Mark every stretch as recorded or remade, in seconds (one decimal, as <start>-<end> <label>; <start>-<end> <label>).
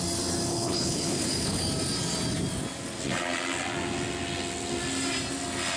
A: 0.0-0.5 recorded; 0.5-1.6 remade; 1.6-5.8 recorded